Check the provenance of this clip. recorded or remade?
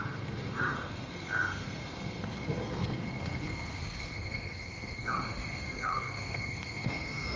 remade